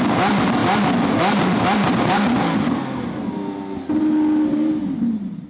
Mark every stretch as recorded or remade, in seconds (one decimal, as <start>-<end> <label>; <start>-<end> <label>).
0.0-5.5 recorded